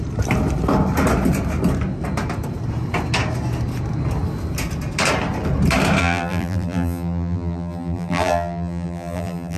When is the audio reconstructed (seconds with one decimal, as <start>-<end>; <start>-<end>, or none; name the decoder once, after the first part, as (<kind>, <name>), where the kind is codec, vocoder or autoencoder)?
6.0-9.6 (vocoder, BigVGAN v2)